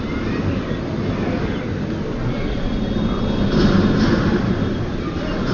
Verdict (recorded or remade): recorded